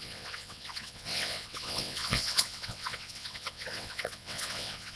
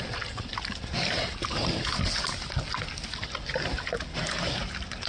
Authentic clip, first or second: second